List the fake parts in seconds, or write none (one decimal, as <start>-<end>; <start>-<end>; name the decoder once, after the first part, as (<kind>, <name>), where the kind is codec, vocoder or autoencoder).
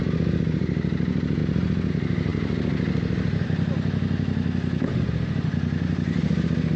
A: none